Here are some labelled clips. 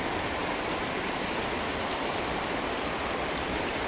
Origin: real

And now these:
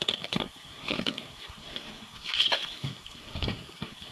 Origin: fake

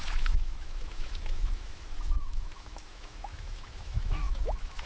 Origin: fake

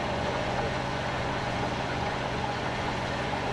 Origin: fake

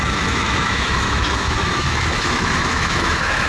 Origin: fake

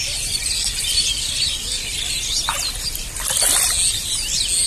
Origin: real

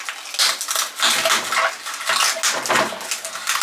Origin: real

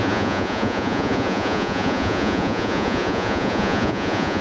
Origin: fake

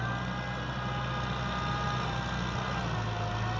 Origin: real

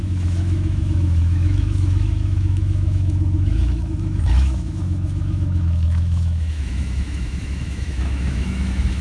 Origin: fake